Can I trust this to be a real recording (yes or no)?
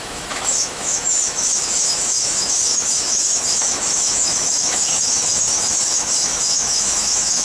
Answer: no